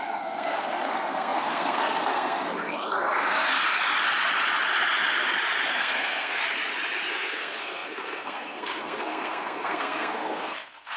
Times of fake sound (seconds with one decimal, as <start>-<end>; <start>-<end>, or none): 0.0-3.7; 5.7-6.4; 7.1-11.0